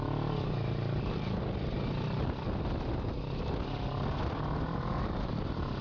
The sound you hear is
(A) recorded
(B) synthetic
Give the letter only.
A